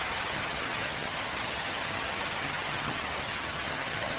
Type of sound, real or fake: fake